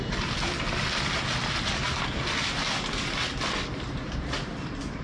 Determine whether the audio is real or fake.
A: real